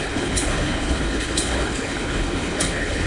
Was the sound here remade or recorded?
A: remade